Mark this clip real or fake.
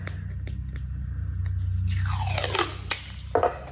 real